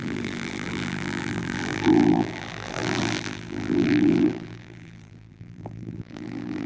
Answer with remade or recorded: remade